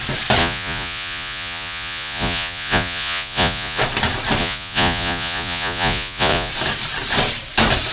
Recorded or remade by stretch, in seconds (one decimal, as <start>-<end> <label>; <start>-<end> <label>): 0.0-0.4 recorded; 0.4-3.8 remade; 3.8-4.4 recorded; 4.4-6.5 remade; 6.5-7.9 recorded